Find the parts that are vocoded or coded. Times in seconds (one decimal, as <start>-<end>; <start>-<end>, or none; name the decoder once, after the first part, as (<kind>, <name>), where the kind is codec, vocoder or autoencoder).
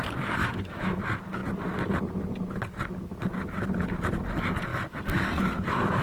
0.4-1.0 (autoencoder, DAC-VAE)